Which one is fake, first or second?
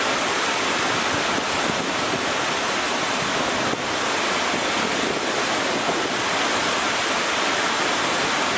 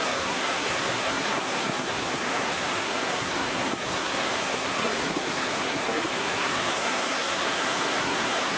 second